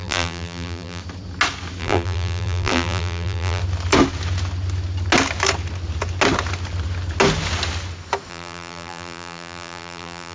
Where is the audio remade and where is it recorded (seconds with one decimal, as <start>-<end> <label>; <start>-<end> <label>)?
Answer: 0.0-1.0 remade; 1.0-1.8 recorded; 1.8-3.6 remade; 3.6-8.3 recorded; 8.3-10.3 remade